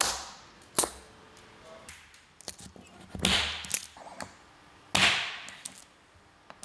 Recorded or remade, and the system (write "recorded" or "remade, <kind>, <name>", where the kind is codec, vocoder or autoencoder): recorded